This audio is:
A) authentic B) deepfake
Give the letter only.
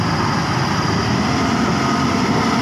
B